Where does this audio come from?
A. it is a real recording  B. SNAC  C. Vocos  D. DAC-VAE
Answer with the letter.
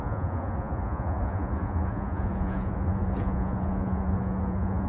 C